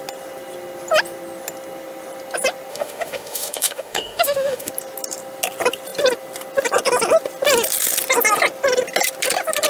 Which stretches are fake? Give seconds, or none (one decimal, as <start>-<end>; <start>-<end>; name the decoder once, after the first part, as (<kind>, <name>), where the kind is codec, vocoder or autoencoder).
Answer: 2.7-4.7 (autoencoder, DAC-VAE)